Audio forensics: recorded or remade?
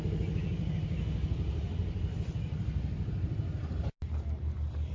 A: recorded